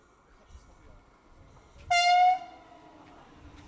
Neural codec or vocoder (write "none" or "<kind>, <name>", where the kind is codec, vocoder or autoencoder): none